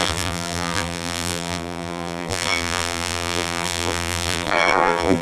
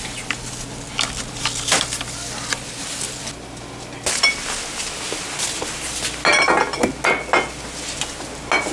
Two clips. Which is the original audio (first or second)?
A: second